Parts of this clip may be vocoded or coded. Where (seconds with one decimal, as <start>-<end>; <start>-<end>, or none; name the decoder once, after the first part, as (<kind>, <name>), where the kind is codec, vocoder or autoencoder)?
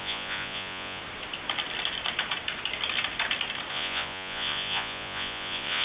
0.0-1.0 (vocoder, Vocos); 3.7-5.8